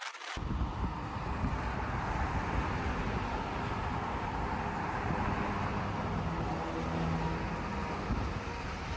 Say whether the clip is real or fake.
real